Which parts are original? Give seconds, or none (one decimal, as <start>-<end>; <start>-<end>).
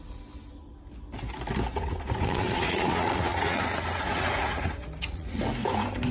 0.0-1.7; 5.4-6.1